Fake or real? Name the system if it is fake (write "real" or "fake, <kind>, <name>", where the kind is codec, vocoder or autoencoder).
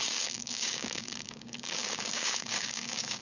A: fake, codec, DAC